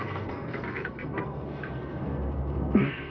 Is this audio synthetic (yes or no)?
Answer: yes